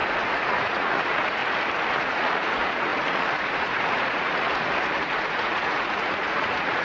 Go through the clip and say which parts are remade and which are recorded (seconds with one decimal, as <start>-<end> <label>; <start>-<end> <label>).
0.0-1.4 remade; 1.4-1.9 recorded; 1.9-6.8 remade